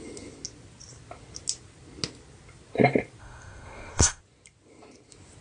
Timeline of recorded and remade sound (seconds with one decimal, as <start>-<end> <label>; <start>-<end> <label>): 0.0-3.2 recorded; 3.2-4.2 remade; 4.2-5.4 recorded